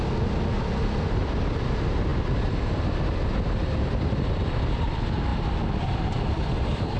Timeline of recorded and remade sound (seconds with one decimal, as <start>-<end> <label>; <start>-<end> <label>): 0.0-7.0 recorded